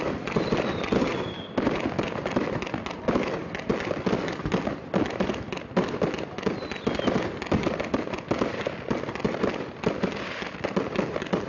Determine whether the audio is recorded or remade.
recorded